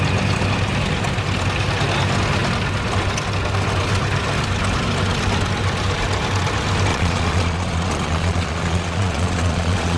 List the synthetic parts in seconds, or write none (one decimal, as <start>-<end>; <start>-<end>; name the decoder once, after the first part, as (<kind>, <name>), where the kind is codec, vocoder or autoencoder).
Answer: 6.9-10.0 (vocoder, Vocos)